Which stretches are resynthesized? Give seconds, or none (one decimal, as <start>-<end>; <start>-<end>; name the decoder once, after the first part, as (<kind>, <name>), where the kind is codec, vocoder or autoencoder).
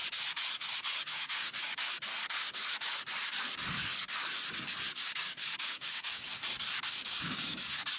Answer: 1.0-2.1 (codec, DAC); 4.9-6.3; 6.9-8.0